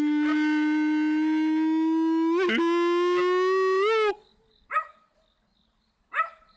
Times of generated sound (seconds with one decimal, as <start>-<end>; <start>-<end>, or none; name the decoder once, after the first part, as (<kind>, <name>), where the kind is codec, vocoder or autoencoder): none